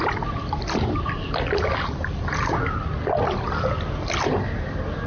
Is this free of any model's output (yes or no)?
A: yes